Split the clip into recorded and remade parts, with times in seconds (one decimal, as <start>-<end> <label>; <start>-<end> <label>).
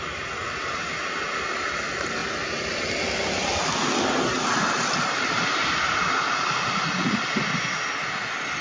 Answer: 0.0-8.6 recorded